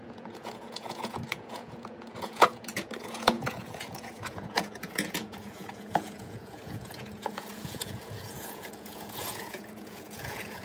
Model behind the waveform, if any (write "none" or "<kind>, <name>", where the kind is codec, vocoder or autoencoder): vocoder, Vocos